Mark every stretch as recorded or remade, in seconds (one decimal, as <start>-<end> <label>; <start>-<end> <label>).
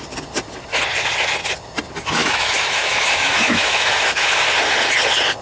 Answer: 0.0-2.2 recorded; 2.2-4.4 remade; 4.4-5.4 recorded